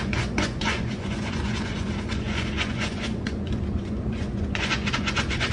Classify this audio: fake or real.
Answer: fake